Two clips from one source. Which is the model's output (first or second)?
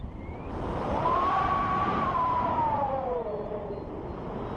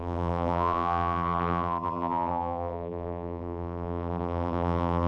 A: second